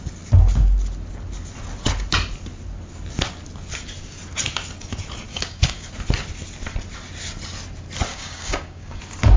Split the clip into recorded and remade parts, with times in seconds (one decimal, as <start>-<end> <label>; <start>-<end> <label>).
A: 0.0-5.3 recorded; 5.3-5.9 remade; 5.9-8.1 recorded; 8.1-9.0 remade; 9.0-9.4 recorded